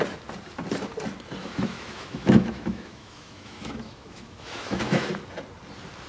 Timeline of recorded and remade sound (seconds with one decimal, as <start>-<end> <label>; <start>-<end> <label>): 0.0-1.4 recorded; 1.4-5.1 remade; 5.1-6.1 recorded